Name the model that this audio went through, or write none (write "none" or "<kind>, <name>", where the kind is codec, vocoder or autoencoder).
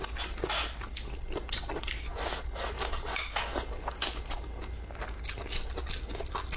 none